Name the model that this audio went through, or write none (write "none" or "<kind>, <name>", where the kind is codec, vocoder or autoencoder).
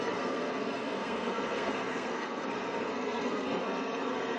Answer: codec, SNAC